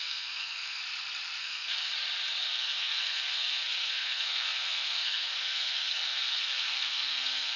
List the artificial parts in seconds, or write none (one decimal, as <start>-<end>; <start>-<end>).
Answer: 0.0-0.8; 1.4-1.9; 2.4-7.6